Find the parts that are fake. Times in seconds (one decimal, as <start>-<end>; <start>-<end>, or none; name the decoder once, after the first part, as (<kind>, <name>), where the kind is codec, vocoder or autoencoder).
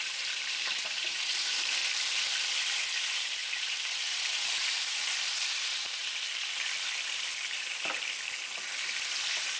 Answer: 0.0-1.8 (vocoder, BigVGAN v2); 2.6-6.0